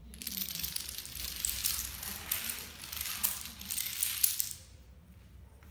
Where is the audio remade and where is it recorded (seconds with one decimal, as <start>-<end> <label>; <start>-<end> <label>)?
0.0-5.7 recorded

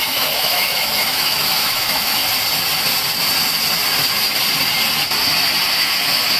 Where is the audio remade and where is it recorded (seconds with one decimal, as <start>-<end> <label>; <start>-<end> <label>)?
0.0-2.2 remade; 2.2-5.8 recorded; 5.8-6.4 remade